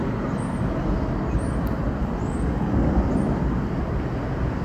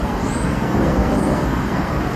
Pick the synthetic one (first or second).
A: second